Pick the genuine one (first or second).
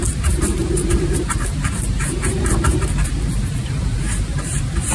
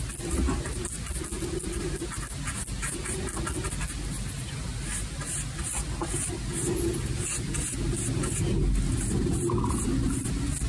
second